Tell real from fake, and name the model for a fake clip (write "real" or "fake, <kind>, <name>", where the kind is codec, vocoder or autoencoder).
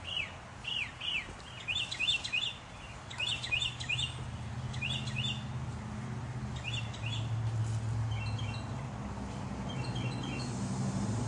real